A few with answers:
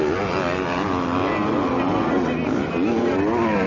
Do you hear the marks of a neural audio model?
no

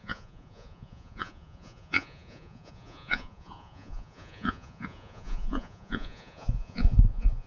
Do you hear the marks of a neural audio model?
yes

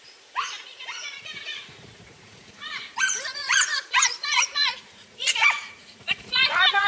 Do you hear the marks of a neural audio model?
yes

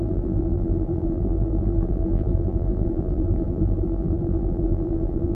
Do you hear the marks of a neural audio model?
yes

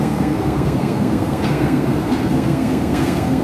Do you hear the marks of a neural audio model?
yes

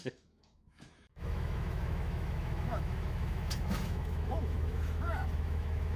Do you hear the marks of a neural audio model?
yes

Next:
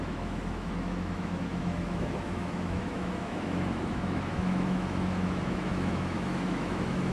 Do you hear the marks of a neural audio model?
yes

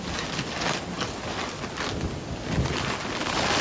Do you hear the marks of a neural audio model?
no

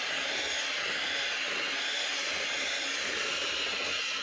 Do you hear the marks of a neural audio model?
no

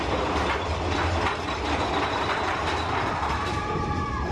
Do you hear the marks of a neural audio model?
no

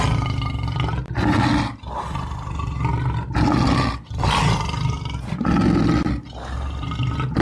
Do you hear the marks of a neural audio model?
no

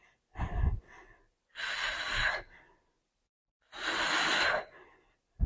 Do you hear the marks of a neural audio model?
no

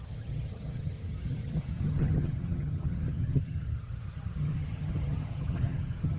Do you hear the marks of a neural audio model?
yes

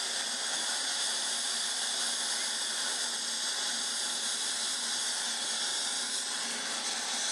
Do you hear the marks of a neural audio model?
no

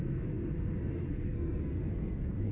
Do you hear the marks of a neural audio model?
yes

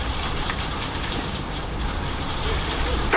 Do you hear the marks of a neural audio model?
yes